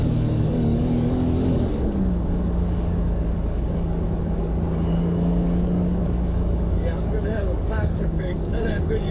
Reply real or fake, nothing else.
fake